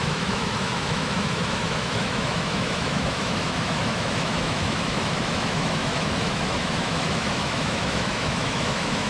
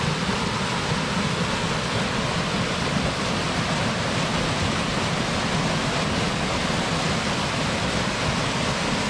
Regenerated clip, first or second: first